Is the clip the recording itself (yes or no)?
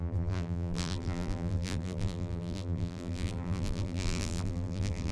no